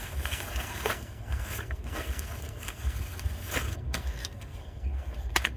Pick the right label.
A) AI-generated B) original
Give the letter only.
A